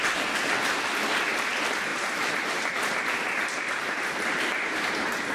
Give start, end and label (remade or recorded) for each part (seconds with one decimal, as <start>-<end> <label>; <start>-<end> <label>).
0.0-1.9 recorded; 1.9-5.3 remade